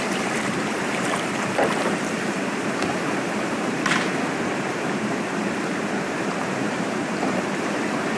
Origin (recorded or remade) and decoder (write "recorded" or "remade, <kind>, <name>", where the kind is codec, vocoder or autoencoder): remade, vocoder, BigVGAN v2